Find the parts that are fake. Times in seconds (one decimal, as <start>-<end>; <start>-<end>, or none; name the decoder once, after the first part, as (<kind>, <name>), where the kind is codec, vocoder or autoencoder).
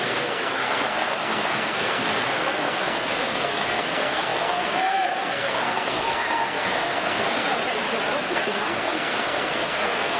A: 0.0-7.6 (codec, SNAC); 8.2-10.2